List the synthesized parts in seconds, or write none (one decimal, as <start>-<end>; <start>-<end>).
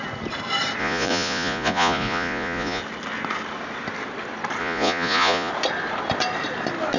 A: 0.8-2.8; 4.6-5.5